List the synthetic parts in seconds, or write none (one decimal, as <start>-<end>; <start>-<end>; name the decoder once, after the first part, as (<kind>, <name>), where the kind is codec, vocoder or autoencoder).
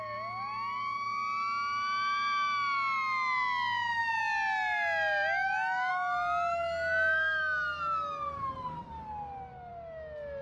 none